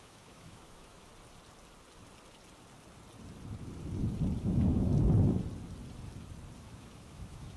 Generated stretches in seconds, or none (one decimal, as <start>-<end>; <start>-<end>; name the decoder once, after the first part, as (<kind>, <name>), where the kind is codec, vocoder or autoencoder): 0.0-1.1 (autoencoder, DAC-VAE); 4.4-4.9; 6.6-7.6